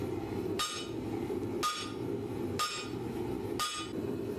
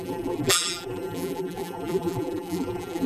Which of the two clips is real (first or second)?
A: first